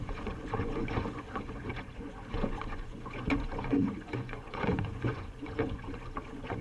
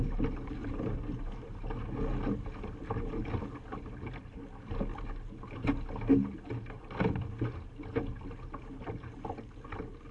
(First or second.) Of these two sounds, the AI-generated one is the first